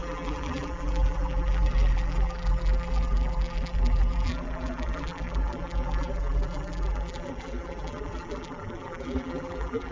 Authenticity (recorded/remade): remade